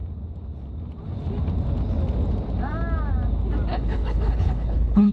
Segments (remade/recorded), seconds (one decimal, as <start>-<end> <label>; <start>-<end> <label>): 0.0-3.7 recorded; 3.7-5.1 remade